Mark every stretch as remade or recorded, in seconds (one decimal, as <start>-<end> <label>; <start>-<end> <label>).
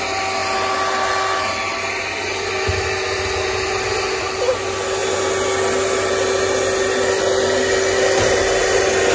0.0-9.1 recorded